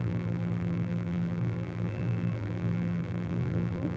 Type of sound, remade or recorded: remade